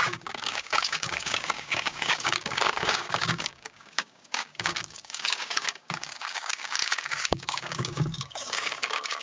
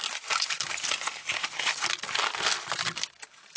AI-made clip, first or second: first